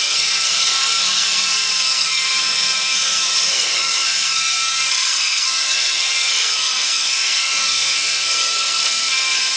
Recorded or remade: remade